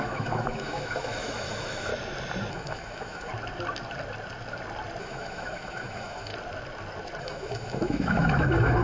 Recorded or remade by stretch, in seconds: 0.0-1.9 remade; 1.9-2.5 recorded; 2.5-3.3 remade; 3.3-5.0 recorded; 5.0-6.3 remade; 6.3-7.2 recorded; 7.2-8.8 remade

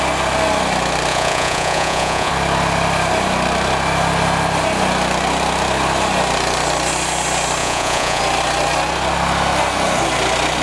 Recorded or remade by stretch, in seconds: 0.0-1.1 recorded; 1.1-2.3 remade; 2.3-7.6 recorded; 7.6-8.2 remade; 8.2-10.6 recorded

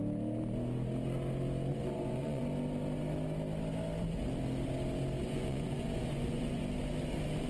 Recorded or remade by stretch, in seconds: 0.0-1.7 recorded; 1.7-2.4 remade; 2.4-5.2 recorded; 5.2-6.6 remade; 6.6-7.5 recorded

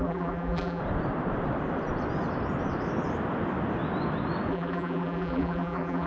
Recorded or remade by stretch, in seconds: 0.0-0.8 remade; 0.8-4.5 recorded; 4.5-6.1 remade

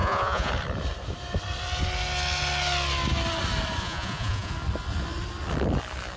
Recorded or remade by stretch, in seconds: 0.0-0.5 remade; 0.5-3.8 recorded; 3.8-4.5 remade; 4.5-6.2 recorded

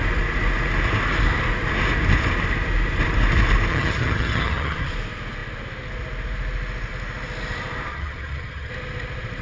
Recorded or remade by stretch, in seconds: 0.0-3.7 recorded; 3.7-4.9 remade; 4.9-7.9 recorded; 7.9-8.7 remade; 8.7-9.4 recorded

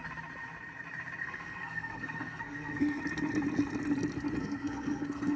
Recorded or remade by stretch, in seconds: 0.0-1.2 recorded; 1.2-3.0 remade; 3.0-4.4 recorded; 4.4-5.4 remade